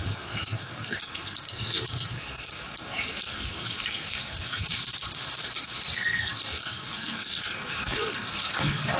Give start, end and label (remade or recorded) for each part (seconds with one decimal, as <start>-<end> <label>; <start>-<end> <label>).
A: 0.0-9.0 remade